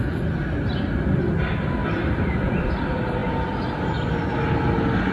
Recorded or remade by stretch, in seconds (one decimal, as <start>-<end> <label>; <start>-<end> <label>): 0.0-1.8 recorded; 1.8-2.8 remade; 2.8-5.1 recorded